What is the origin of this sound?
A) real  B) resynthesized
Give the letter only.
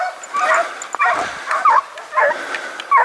A